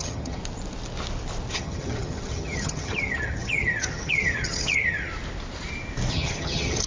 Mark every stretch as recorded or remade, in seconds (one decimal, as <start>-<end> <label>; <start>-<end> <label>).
0.0-0.4 remade; 0.4-1.5 recorded; 1.5-5.1 remade; 5.1-6.1 recorded; 6.1-6.9 remade